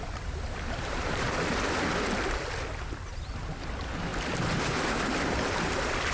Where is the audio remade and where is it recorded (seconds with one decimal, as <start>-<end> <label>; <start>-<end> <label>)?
0.0-6.1 recorded